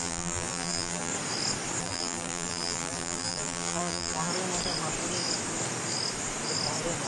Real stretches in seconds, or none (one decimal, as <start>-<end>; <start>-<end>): 1.1-1.8; 4.3-7.1

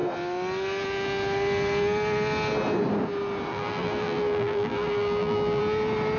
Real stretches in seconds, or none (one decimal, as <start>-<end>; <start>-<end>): 0.0-3.5; 5.6-6.2

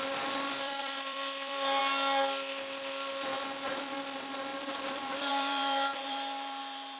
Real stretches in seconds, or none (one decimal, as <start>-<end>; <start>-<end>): 1.8-3.8